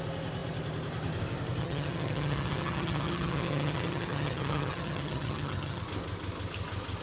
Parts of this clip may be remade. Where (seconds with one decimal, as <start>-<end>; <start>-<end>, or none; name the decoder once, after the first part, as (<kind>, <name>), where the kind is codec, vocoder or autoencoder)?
1.6-5.8 (vocoder, HiFi-GAN)